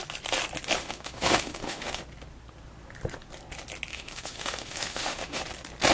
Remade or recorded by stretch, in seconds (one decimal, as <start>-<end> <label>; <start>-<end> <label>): 0.0-0.8 recorded; 0.8-2.0 remade; 2.0-3.9 recorded; 3.9-5.4 remade; 5.4-5.9 recorded